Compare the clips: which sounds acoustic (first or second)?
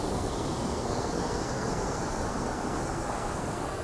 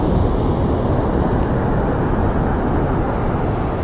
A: second